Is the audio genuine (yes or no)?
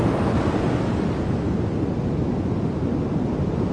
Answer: yes